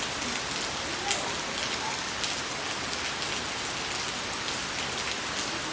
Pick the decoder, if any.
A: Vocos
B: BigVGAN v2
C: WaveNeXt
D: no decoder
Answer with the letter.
D